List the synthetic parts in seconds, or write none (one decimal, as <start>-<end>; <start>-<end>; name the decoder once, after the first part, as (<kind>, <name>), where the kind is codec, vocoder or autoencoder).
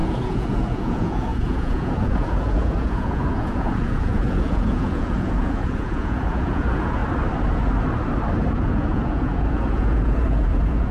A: 0.0-7.0 (vocoder, Vocos); 8.5-10.9